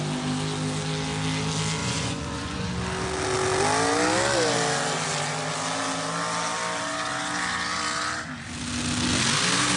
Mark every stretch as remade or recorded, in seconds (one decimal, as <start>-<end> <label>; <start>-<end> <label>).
0.0-1.8 recorded; 1.8-2.7 remade; 2.7-9.8 recorded